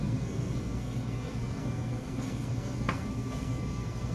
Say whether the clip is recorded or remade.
remade